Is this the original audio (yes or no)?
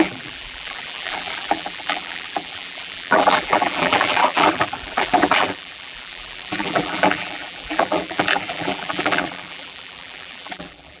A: no